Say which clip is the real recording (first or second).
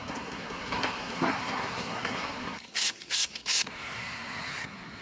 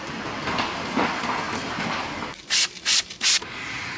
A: second